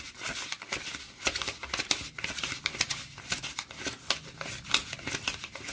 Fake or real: real